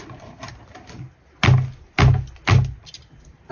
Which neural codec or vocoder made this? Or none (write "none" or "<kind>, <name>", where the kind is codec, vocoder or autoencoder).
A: none